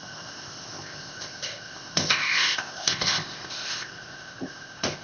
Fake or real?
fake